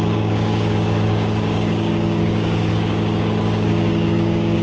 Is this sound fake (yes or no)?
yes